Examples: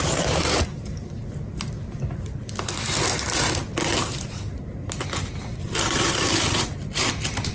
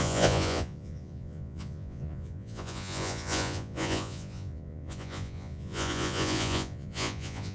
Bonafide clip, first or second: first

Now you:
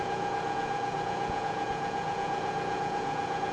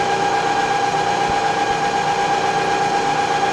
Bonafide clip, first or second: second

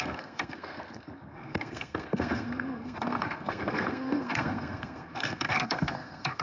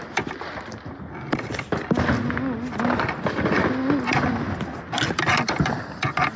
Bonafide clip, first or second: second